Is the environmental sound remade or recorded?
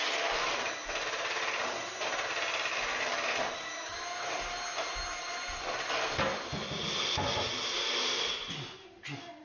recorded